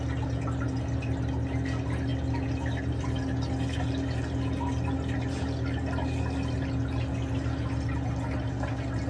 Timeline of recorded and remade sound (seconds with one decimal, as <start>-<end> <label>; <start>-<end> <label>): 0.0-9.1 recorded